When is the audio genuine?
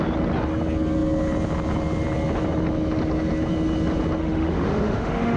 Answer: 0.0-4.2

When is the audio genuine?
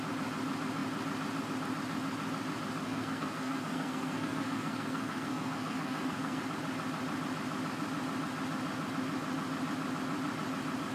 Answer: 0.0-2.8; 6.4-10.9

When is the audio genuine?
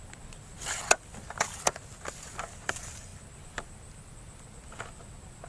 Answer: 0.0-5.5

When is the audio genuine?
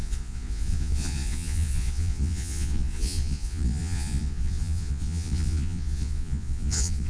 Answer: none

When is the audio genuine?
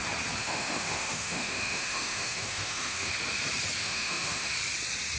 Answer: 0.0-0.4; 3.1-3.8; 4.5-5.2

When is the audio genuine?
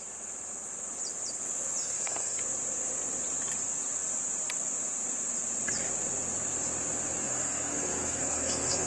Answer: 0.0-1.8; 2.4-7.2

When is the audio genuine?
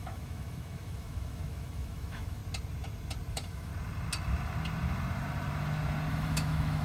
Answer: 2.4-3.3; 3.7-6.1